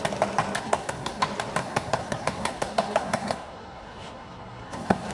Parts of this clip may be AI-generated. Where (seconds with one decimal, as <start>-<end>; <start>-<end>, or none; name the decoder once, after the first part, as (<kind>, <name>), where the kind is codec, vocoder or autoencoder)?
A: 0.6-1.2 (codec, SNAC); 1.6-5.1